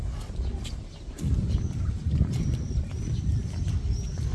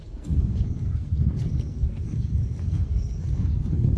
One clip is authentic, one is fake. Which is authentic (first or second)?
first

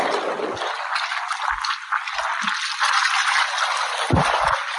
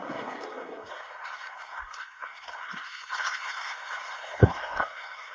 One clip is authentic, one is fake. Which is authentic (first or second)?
first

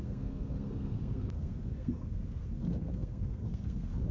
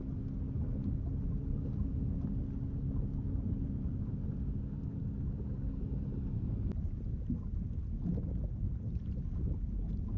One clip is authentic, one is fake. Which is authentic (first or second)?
second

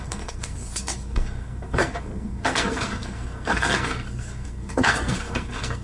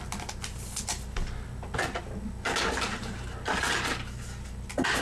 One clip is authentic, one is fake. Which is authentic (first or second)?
second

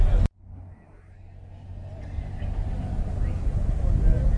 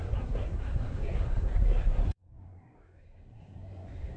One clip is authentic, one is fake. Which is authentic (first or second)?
first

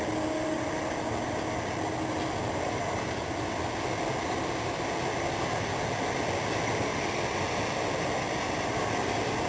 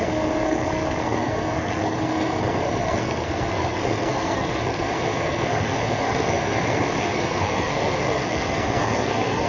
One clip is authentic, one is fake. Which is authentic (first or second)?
first